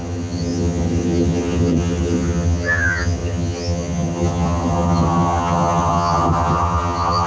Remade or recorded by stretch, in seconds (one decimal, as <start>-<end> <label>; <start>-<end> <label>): 0.0-7.3 remade